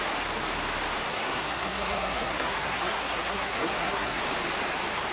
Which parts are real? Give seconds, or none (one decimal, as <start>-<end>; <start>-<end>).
0.0-1.1; 4.2-5.1